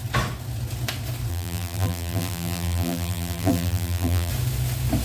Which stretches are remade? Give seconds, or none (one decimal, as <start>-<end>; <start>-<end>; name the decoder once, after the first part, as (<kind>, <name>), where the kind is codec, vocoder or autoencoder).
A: 1.3-4.3 (vocoder, BigVGAN v2)